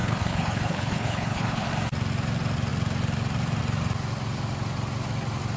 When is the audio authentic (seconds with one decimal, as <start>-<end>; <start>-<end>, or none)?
1.7-5.6